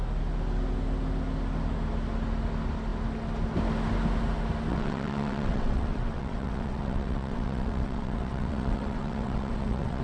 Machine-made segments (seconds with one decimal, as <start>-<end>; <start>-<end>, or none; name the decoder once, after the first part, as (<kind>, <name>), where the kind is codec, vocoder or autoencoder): 4.7-10.0 (vocoder, WaveNeXt)